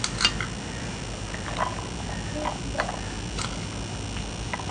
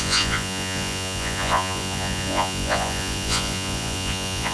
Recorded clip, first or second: first